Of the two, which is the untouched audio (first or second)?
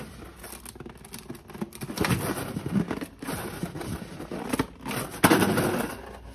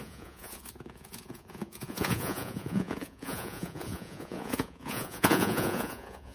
first